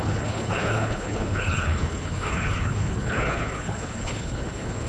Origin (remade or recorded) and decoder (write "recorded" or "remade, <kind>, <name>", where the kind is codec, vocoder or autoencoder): remade, codec, HILCodec